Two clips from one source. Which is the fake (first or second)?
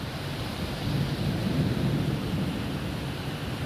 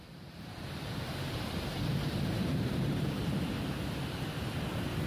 second